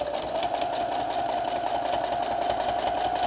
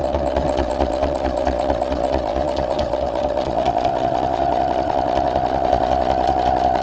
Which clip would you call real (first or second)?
first